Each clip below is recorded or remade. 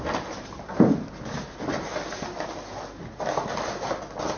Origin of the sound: recorded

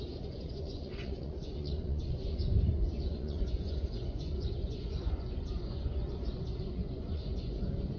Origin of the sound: remade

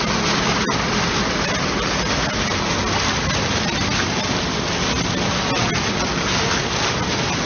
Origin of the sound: recorded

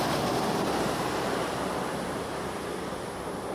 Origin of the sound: remade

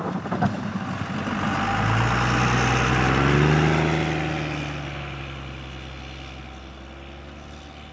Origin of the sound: recorded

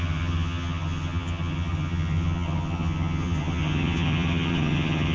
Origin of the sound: remade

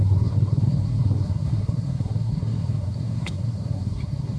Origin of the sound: remade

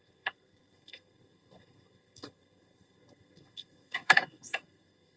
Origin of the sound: remade